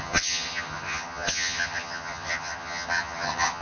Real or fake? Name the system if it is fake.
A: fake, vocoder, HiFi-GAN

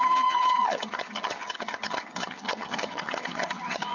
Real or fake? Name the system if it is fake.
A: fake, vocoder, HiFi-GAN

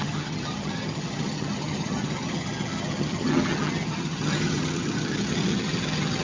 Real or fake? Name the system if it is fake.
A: fake, vocoder, HiFi-GAN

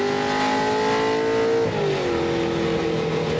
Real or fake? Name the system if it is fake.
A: real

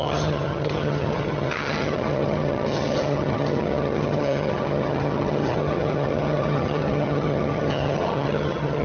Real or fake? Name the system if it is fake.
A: fake, vocoder, HiFi-GAN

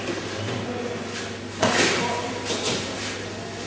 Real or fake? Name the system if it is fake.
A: real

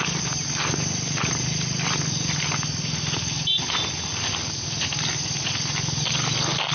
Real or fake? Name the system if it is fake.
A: real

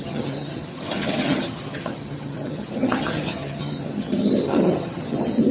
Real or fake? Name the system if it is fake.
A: fake, vocoder, HiFi-GAN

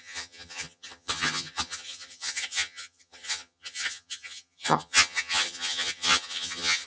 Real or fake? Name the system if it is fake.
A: fake, vocoder, HiFi-GAN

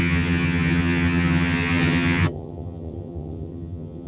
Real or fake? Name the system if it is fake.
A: fake, vocoder, HiFi-GAN